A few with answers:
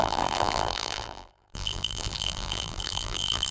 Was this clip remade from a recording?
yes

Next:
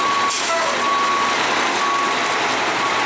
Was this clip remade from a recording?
no